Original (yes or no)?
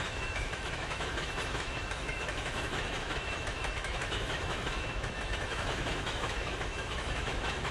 no